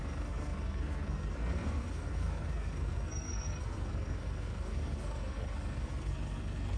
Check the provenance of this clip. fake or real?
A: fake